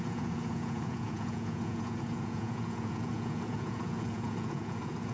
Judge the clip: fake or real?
fake